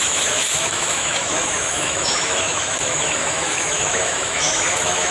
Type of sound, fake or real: fake